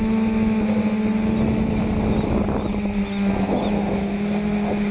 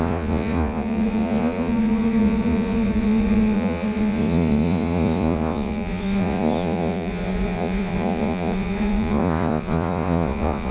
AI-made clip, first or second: second